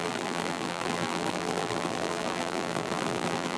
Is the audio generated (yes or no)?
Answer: yes